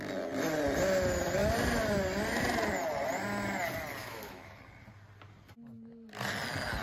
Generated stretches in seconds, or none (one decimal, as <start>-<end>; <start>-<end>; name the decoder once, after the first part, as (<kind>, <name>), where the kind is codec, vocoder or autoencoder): 4.0-4.6 (autoencoder, DAC-VAE)